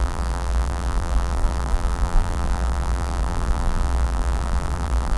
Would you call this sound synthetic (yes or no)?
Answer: yes